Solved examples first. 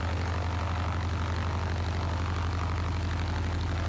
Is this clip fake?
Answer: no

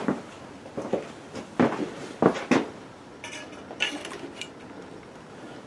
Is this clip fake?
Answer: yes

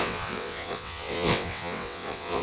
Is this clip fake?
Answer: yes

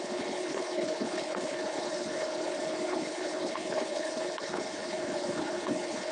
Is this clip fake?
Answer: yes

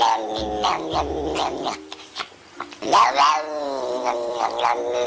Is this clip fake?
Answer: no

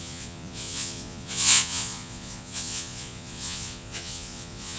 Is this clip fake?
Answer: yes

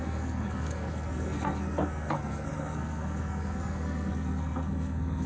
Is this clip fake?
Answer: yes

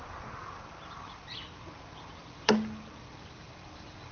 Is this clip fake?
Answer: no